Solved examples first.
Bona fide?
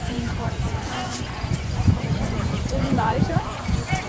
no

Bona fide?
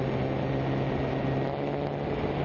yes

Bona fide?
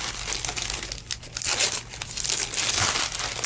yes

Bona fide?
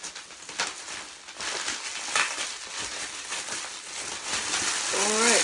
yes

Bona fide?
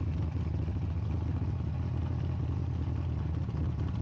yes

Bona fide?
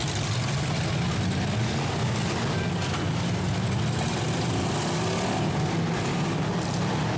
yes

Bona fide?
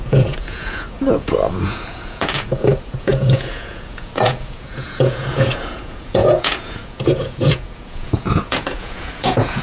no